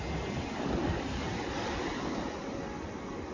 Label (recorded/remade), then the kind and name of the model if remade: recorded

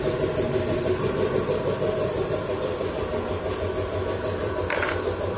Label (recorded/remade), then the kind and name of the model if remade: remade, vocoder, BigVGAN v2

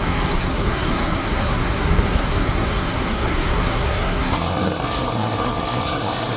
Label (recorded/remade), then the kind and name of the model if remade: remade, codec, SNAC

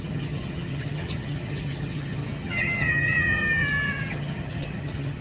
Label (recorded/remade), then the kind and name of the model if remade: remade, vocoder, HiFi-GAN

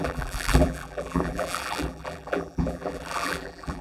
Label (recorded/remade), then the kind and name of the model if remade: remade, vocoder, BigVGAN v2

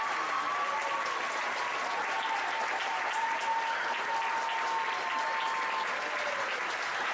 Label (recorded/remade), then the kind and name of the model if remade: recorded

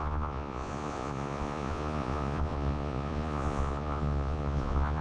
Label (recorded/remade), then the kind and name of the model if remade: remade, vocoder, Vocos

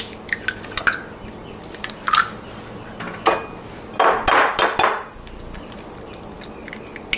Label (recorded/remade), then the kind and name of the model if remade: recorded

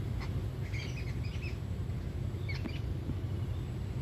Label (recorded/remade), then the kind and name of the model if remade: recorded